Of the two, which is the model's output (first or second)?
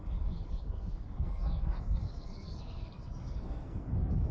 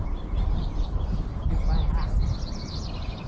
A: first